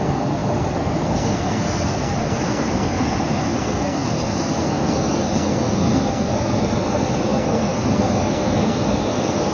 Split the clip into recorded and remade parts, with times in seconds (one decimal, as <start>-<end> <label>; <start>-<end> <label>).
0.0-9.5 remade